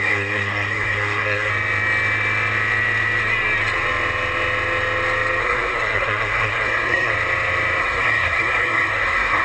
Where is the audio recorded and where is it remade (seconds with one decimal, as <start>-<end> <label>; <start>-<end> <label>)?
0.0-1.5 remade; 1.5-5.4 recorded; 5.4-7.1 remade; 7.1-7.8 recorded; 7.8-9.4 remade